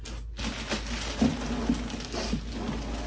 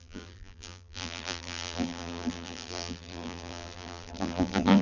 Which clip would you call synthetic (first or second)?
second